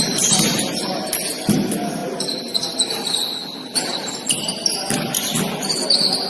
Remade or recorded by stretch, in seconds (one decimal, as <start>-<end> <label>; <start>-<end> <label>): 0.0-6.3 recorded